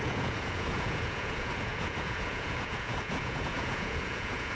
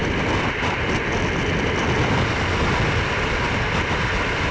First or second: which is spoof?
first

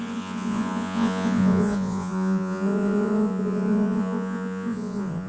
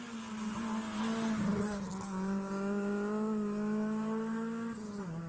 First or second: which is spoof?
first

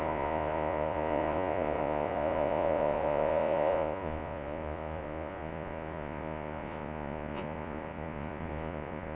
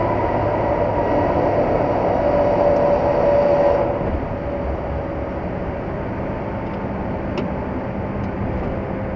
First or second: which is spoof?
first